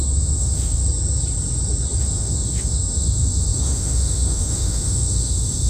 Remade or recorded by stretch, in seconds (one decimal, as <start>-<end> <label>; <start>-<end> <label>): 0.0-0.8 remade; 0.8-2.0 recorded; 2.0-5.7 remade